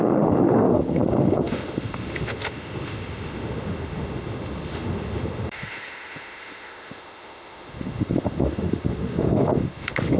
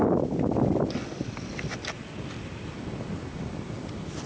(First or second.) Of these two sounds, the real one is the second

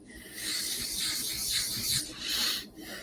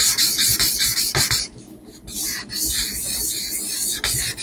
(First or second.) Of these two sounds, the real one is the second